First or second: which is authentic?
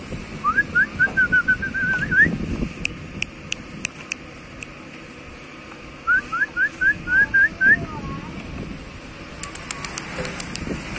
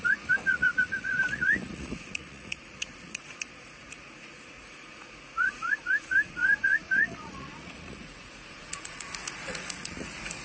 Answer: first